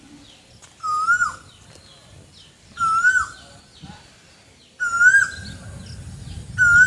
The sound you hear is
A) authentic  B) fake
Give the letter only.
A